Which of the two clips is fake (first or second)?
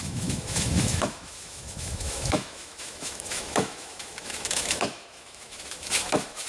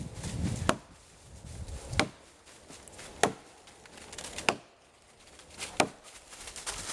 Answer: first